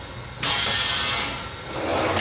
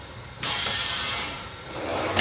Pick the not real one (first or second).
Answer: second